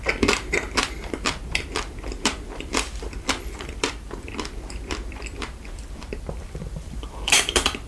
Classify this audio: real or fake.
fake